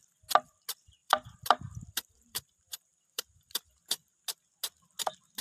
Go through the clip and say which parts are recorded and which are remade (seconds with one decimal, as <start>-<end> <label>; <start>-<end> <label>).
0.0-1.0 recorded; 1.0-3.7 remade; 3.7-5.4 recorded